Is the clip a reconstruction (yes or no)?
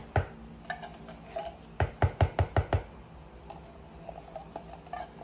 no